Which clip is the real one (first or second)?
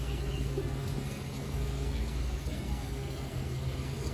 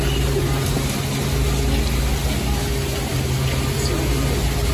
second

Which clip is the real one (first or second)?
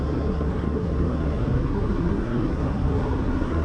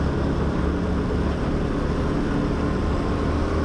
second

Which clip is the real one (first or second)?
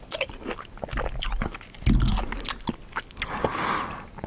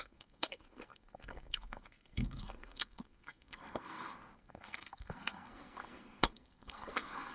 first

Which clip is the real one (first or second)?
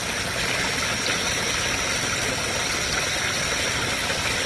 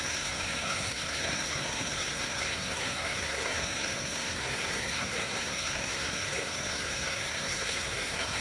first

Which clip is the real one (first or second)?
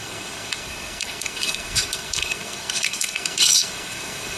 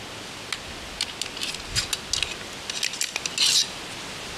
second